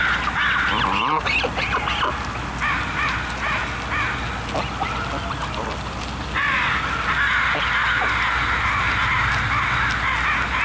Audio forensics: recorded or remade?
recorded